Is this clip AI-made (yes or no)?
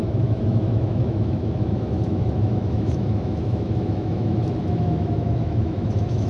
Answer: yes